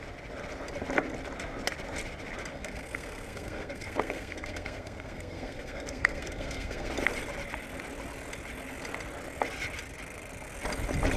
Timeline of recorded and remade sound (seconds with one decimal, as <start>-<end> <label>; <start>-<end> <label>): 0.0-2.5 recorded; 2.5-6.9 remade; 6.9-11.2 recorded